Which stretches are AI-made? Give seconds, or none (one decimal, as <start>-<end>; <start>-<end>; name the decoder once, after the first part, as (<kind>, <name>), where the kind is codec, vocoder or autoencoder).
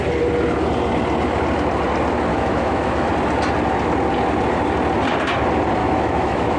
2.3-3.1 (autoencoder, DAC-VAE); 5.8-6.6